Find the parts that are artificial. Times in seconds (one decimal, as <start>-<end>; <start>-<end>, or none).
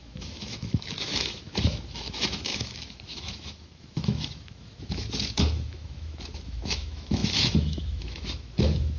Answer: 0.0-9.0